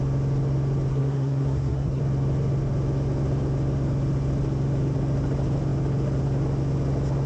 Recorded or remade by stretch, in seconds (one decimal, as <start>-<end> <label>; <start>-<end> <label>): 0.0-0.9 recorded; 0.9-2.0 remade; 2.0-7.3 recorded